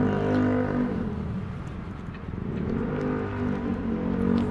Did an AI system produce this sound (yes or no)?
no